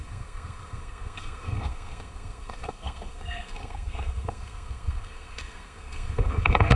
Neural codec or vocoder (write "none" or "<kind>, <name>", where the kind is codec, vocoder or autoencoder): codec, SNAC